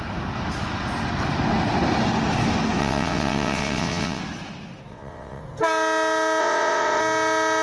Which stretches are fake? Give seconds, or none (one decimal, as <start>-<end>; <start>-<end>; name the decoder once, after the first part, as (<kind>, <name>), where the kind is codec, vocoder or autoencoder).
2.8-4.2 (vocoder, WaveNeXt); 4.9-5.4; 6.4-7.0